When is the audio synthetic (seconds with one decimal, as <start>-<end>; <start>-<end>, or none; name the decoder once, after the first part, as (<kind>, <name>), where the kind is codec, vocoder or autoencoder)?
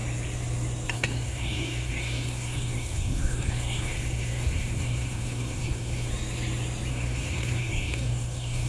0.9-6.1 (codec, SNAC); 6.9-8.7